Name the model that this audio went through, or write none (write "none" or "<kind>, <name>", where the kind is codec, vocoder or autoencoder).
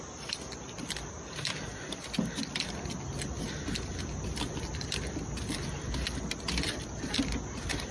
none